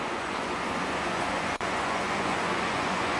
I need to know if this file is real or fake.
fake